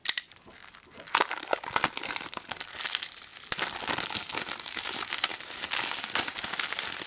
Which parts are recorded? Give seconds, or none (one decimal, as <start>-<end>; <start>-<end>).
0.0-7.1